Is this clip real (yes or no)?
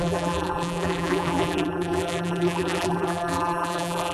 no